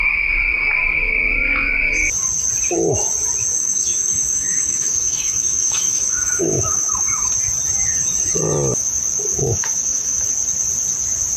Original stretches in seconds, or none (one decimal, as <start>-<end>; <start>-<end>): 0.0-3.6; 7.3-9.3; 10.2-11.4